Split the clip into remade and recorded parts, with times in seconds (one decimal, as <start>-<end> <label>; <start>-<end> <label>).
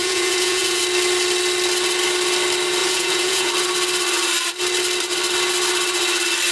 0.0-0.8 remade; 0.8-2.8 recorded; 2.8-3.5 remade; 3.5-6.5 recorded